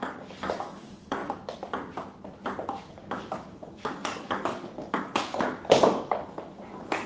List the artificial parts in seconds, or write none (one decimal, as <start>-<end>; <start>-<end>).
0.0-1.2; 2.9-7.1